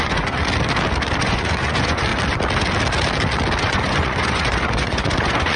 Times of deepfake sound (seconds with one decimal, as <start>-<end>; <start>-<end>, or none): 0.0-0.4; 1.2-2.1; 3.6-5.6